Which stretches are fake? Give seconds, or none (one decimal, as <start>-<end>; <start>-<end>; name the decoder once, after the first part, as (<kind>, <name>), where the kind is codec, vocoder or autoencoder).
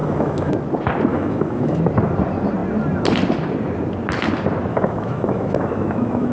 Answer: 0.0-0.5 (autoencoder, DAC-VAE); 1.1-1.8; 4.7-6.3